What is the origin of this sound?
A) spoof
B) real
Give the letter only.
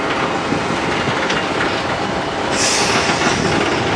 B